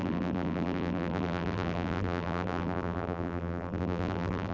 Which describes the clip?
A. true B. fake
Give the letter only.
B